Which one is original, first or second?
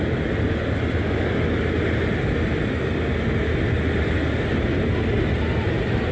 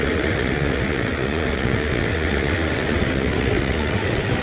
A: first